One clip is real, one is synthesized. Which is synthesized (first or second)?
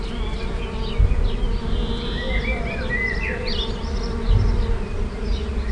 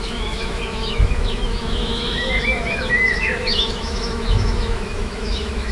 second